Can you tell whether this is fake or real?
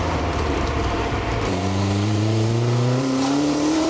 fake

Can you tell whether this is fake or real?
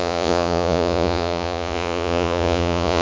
fake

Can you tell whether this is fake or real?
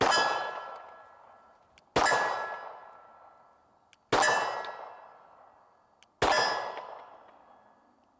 real